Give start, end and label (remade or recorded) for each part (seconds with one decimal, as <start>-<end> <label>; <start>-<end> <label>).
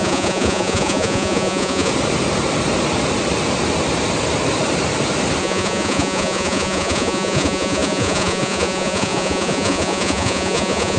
0.0-1.9 remade; 1.9-5.4 recorded; 5.4-11.0 remade